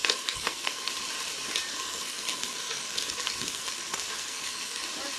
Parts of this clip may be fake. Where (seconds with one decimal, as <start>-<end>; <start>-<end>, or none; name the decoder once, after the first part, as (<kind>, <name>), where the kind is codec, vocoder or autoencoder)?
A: 0.0-0.9 (codec, SNAC); 1.7-4.8